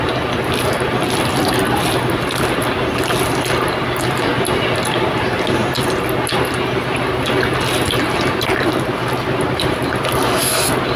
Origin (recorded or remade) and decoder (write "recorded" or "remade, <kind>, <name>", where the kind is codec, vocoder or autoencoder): recorded